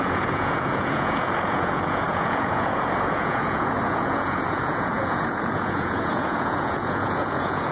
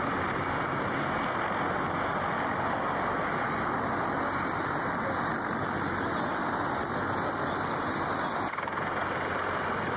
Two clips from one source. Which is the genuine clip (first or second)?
second